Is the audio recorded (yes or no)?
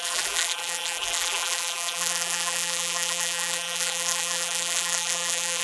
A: no